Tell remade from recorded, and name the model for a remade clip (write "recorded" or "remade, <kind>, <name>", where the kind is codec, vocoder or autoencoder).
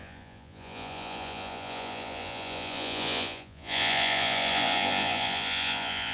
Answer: remade, vocoder, Vocos